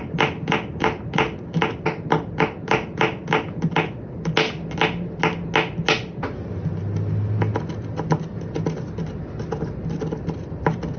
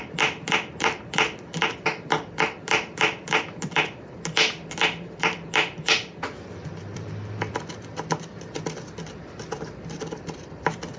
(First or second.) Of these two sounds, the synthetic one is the second